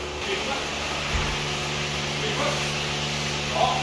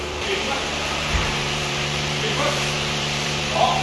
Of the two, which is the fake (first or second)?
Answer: second